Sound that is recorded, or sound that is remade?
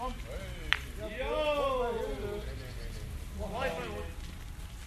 recorded